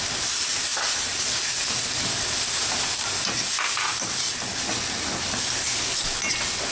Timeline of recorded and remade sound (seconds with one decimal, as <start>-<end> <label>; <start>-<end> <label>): 0.0-6.7 recorded